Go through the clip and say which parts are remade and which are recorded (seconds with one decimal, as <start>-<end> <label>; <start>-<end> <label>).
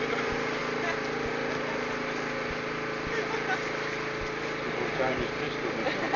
0.0-6.2 recorded